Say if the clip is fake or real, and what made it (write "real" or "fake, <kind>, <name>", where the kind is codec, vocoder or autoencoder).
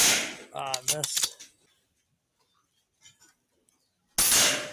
real